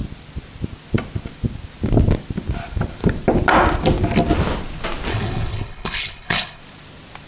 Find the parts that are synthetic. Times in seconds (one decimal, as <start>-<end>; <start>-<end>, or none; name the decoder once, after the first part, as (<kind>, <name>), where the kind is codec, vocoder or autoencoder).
5.1-6.6 (codec, HILCodec)